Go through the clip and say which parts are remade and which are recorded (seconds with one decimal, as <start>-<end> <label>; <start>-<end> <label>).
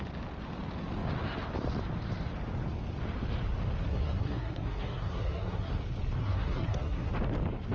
0.0-3.9 recorded; 3.9-5.7 remade; 5.7-6.2 recorded; 6.2-7.1 remade; 7.1-7.7 recorded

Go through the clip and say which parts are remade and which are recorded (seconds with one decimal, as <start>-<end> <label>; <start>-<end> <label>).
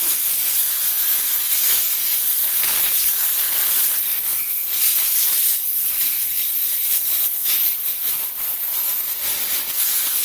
0.0-9.2 remade; 9.2-9.7 recorded; 9.7-10.2 remade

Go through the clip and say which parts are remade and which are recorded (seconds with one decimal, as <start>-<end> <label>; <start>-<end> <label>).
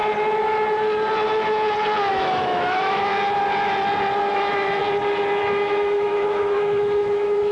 0.0-2.1 recorded; 2.1-3.1 remade; 3.1-4.3 recorded; 4.3-4.8 remade; 4.8-5.4 recorded; 5.4-7.5 remade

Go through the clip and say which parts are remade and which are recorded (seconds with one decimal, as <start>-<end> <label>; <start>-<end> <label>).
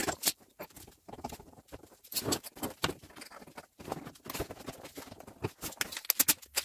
0.0-3.0 remade; 3.0-6.6 recorded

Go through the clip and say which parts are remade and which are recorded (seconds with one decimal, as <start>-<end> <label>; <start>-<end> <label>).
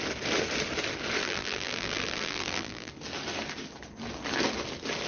0.0-1.2 recorded; 1.2-2.9 remade; 2.9-5.1 recorded